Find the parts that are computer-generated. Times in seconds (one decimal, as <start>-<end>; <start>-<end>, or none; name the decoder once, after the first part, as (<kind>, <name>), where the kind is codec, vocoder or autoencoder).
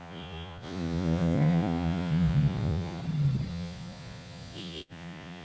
0.0-3.0 (vocoder, Vocos); 3.5-5.4